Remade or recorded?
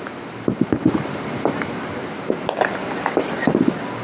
recorded